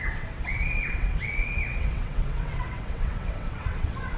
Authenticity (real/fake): fake